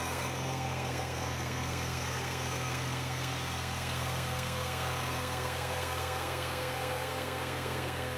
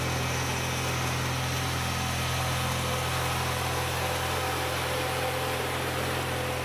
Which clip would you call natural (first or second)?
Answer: second